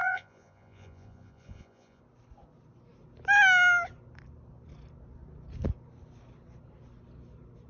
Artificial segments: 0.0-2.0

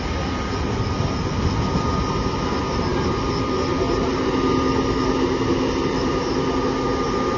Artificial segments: none

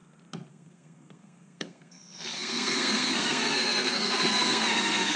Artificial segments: 0.5-5.2

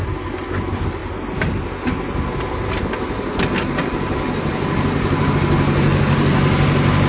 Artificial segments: none

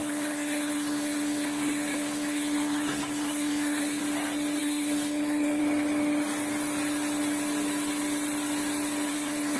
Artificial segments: 0.0-4.0; 4.6-5.6; 9.1-9.6